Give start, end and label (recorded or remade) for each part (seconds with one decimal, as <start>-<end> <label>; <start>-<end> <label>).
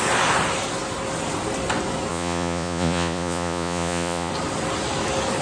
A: 0.0-2.1 recorded; 2.1-4.3 remade; 4.3-5.4 recorded